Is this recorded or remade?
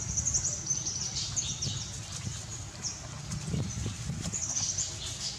recorded